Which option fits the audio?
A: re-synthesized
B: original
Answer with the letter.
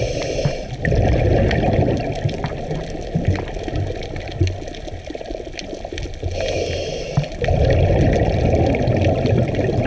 B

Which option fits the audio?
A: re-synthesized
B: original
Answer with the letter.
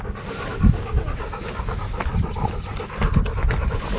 B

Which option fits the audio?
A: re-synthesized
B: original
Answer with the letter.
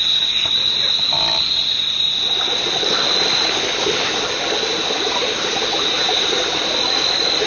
B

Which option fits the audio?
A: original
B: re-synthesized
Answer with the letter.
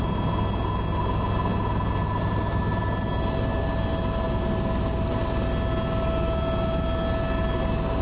A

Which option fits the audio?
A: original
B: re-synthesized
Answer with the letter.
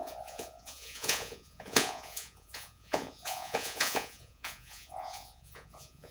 B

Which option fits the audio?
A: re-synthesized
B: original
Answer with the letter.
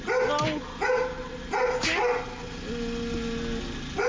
B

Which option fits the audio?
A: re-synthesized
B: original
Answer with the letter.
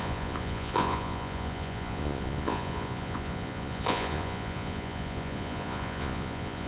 A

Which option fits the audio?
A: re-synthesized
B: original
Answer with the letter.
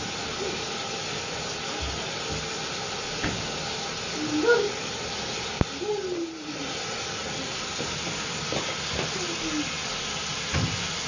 B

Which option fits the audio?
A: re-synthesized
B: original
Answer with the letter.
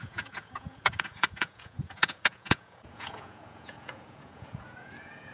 A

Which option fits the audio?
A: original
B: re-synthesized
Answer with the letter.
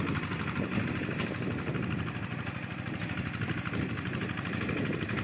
A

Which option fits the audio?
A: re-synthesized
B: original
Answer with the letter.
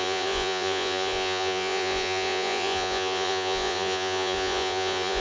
A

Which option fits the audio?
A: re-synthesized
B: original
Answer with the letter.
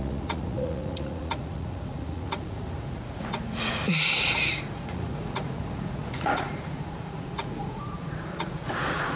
A